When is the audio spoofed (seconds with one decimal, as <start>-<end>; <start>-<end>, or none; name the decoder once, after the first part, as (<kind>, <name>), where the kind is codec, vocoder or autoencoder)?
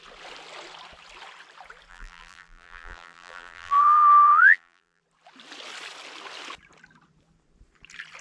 1.9-5.0 (vocoder, BigVGAN v2)